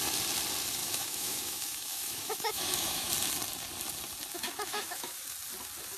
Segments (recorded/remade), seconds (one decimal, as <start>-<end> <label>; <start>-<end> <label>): 0.0-0.8 recorded; 0.8-3.1 remade; 3.1-4.3 recorded; 4.3-5.2 remade; 5.2-6.0 recorded